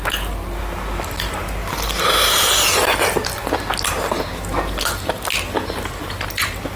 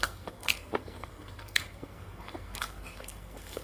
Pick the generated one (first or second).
second